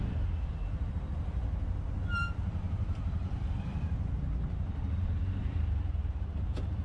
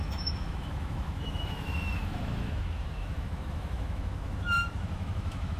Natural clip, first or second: first